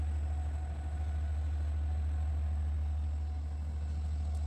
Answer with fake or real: real